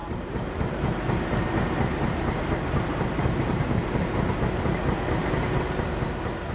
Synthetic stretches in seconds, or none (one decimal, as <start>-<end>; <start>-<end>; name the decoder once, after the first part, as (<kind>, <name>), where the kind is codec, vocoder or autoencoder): 0.0-3.7 (vocoder, BigVGAN v2)